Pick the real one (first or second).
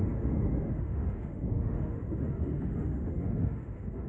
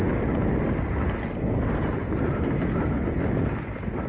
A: second